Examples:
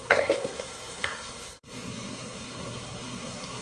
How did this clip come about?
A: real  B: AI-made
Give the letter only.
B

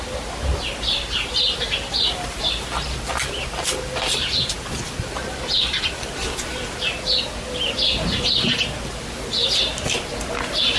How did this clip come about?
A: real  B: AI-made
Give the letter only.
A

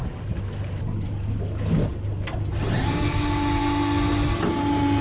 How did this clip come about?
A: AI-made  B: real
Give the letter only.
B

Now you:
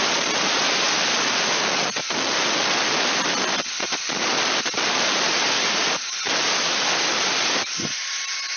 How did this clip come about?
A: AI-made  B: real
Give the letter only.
B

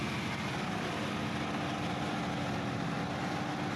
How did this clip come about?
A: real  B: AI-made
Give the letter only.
A